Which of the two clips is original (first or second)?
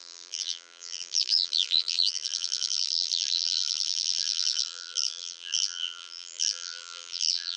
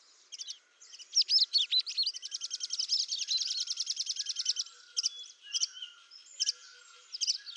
second